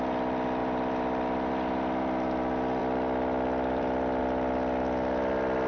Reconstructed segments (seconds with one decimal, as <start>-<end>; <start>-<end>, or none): 0.6-1.5; 2.8-4.2